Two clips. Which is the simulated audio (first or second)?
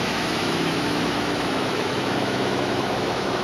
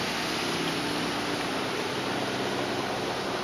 first